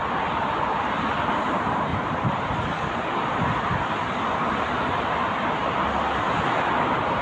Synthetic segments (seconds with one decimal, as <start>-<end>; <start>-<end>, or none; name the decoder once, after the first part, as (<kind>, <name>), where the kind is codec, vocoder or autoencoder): 1.9-4.3 (vocoder, BigVGAN v2)